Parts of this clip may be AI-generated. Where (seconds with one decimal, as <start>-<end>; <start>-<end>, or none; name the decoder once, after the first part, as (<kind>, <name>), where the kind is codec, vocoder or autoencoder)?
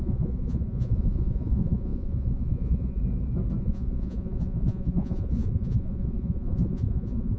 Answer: 0.0-3.0 (vocoder, Vocos); 3.6-7.4